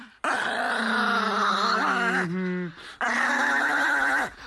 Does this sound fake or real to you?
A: real